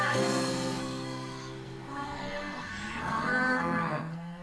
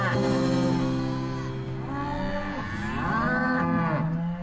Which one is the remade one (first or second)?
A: first